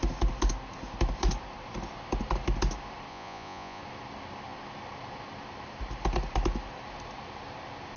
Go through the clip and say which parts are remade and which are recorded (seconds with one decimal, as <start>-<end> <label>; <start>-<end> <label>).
0.0-3.1 recorded; 3.1-3.8 remade; 3.8-8.0 recorded